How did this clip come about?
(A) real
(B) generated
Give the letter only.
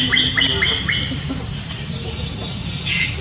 A